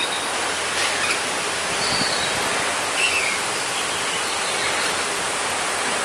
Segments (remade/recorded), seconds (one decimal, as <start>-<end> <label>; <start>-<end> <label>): 0.0-0.8 remade; 0.8-1.7 recorded; 1.7-6.0 remade